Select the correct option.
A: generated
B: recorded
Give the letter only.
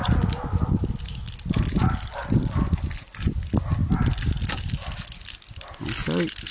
B